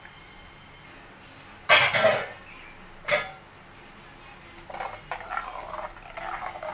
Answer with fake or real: real